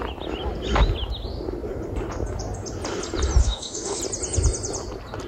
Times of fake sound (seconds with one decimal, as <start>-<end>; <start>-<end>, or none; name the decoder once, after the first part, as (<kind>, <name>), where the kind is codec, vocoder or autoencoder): 3.4-4.0 (autoencoder, DAC-VAE)